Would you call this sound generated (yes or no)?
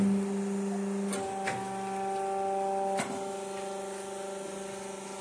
no